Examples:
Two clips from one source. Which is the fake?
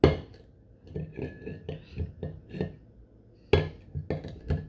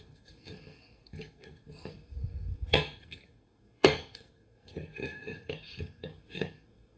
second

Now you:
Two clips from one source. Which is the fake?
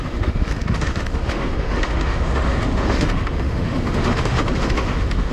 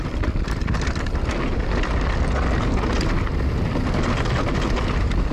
first